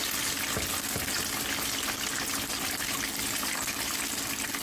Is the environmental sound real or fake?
real